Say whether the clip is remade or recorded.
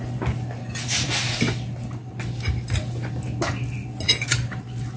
recorded